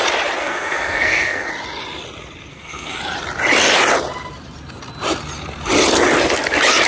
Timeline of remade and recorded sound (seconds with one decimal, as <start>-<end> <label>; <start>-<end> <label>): 0.0-0.4 recorded; 0.4-1.5 remade; 1.5-2.5 recorded; 2.5-3.0 remade; 3.0-6.9 recorded